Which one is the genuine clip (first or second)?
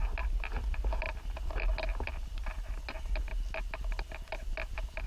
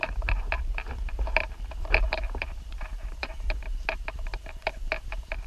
first